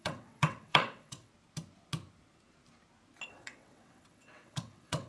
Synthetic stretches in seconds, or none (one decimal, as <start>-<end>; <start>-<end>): 0.0-1.3; 3.3-5.1